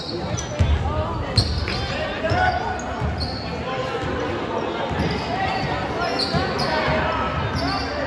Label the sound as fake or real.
real